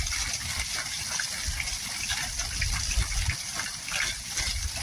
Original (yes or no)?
yes